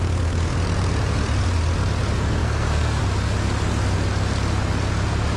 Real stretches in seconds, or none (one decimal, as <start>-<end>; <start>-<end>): 0.0-2.4; 3.0-5.4